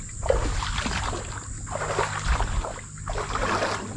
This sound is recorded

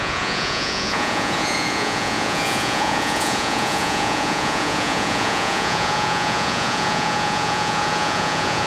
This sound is remade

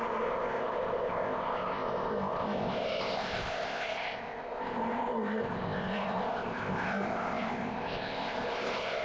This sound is remade